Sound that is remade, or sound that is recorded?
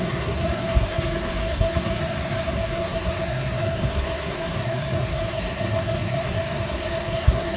remade